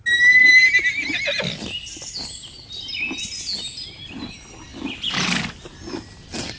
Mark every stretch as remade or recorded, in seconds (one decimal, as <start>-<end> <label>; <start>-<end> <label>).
0.0-6.6 recorded